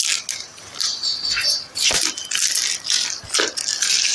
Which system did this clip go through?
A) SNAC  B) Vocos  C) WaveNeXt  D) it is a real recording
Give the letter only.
D